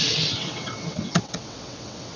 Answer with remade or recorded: remade